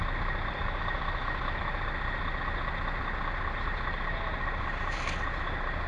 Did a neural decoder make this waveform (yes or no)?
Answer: no